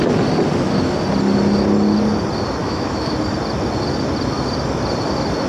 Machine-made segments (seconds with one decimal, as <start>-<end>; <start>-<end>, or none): 2.6-3.1